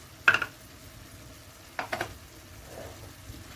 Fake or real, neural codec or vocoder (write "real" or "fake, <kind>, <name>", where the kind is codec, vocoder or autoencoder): real